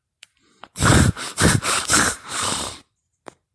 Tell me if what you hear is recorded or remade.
remade